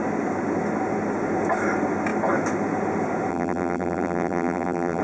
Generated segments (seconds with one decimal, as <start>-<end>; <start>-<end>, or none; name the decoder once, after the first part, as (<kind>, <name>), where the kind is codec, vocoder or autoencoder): 3.3-5.0 (vocoder, BigVGAN v2)